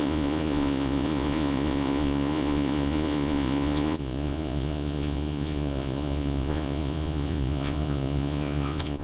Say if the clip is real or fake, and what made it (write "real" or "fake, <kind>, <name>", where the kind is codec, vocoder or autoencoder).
fake, vocoder, Vocos